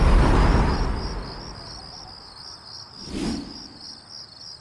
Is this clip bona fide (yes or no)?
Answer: yes